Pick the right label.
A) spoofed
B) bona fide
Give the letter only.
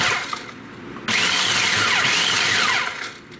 B